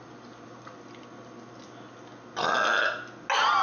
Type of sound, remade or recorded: recorded